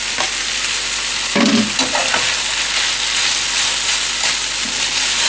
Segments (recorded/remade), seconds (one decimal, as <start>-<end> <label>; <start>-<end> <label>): 0.0-5.3 recorded